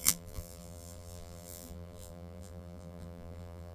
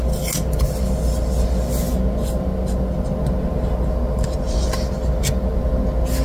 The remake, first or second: first